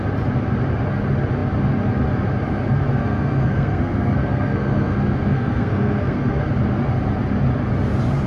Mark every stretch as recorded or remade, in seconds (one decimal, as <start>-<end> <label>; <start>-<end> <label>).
0.0-2.9 recorded; 2.9-6.4 remade; 6.4-8.3 recorded